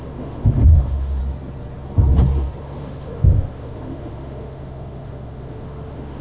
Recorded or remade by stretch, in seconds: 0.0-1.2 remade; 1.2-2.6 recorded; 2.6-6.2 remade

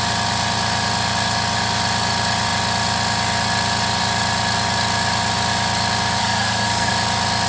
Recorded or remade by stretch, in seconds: 0.0-6.2 recorded; 6.2-6.9 remade; 6.9-7.5 recorded

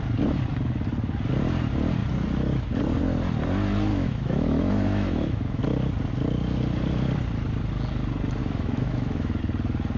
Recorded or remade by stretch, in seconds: 0.0-3.9 recorded; 3.9-5.6 remade; 5.6-8.4 recorded; 8.4-9.4 remade; 9.4-10.0 recorded

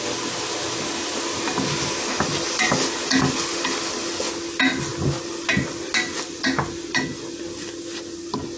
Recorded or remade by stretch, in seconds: 0.0-8.6 recorded

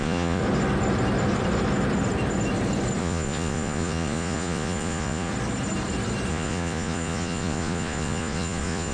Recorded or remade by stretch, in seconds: 0.0-0.4 remade; 0.4-3.0 recorded; 3.0-5.3 remade; 5.3-6.3 recorded; 6.3-8.9 remade

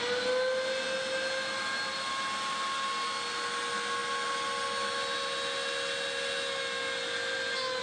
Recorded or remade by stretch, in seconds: 0.0-7.8 recorded

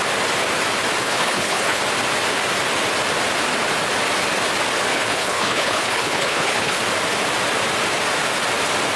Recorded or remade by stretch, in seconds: 0.0-1.0 recorded; 1.0-1.8 remade; 1.8-4.9 recorded; 4.9-6.8 remade; 6.8-9.0 recorded